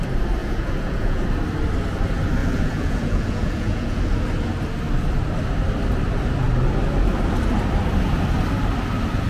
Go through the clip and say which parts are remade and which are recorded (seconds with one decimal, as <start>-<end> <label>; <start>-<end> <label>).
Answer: 0.0-0.4 recorded; 0.4-1.2 remade; 1.2-2.4 recorded; 2.4-4.0 remade; 4.0-9.3 recorded